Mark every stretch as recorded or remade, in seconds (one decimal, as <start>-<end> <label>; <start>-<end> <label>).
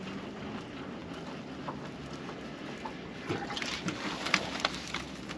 0.0-5.4 recorded